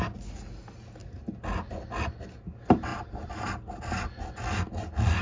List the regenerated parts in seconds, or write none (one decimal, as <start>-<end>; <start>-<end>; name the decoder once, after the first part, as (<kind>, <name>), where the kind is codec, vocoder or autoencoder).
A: none